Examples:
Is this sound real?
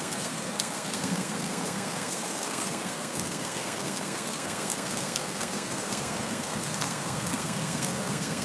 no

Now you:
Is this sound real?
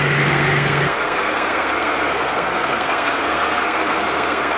no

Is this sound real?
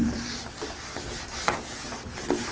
yes